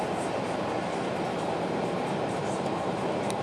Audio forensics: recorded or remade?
remade